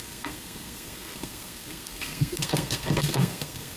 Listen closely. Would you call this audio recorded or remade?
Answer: remade